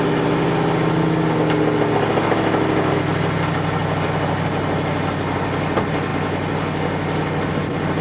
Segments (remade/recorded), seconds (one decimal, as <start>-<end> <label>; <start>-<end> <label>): 0.0-8.0 recorded